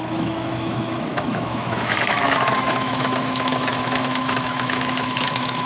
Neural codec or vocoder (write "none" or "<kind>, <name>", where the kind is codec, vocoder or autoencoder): autoencoder, DAC-VAE